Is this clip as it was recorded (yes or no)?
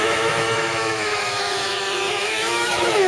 no